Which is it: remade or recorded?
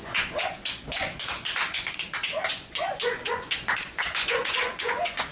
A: remade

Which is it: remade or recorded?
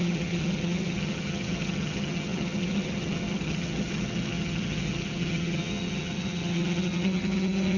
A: remade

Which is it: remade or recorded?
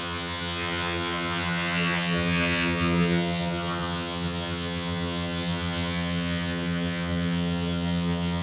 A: remade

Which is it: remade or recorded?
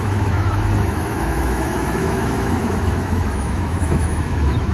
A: remade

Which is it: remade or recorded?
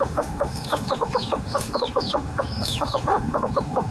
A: remade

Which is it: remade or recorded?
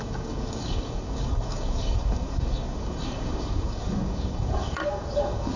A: remade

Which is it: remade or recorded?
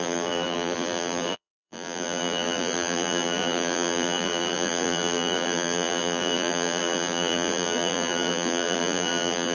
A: remade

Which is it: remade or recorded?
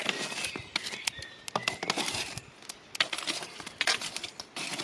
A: recorded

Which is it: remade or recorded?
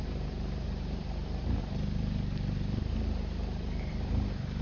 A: remade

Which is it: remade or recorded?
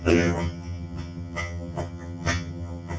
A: remade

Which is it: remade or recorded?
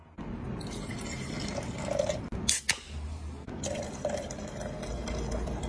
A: recorded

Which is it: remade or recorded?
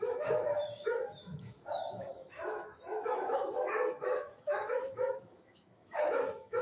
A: remade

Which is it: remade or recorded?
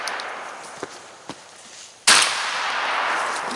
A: recorded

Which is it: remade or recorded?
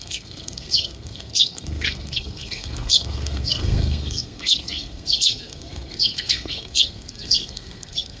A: remade